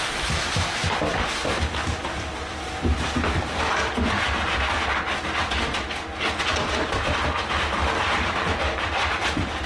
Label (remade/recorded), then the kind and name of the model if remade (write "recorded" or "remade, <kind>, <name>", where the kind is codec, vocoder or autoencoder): recorded